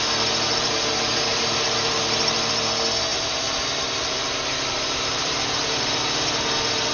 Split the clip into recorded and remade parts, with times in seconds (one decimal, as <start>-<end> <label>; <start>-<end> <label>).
0.0-1.3 recorded; 1.3-2.0 remade; 2.0-6.9 recorded